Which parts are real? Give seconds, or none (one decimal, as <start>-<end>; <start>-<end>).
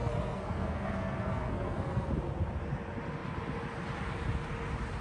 2.1-5.0